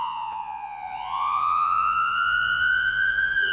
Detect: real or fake fake